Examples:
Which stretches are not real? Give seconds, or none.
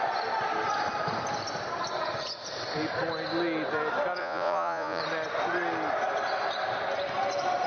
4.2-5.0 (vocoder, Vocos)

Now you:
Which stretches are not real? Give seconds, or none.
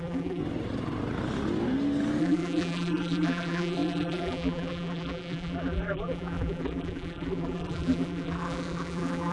0.0-0.4 (vocoder, BigVGAN v2); 2.2-9.3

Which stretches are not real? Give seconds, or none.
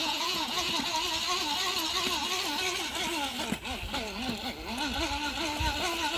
0.0-0.7 (vocoder, Vocos)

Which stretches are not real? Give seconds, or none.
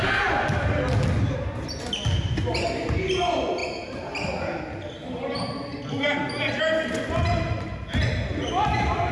none